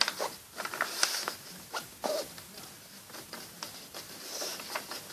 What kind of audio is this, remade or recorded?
recorded